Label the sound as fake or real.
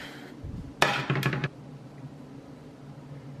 real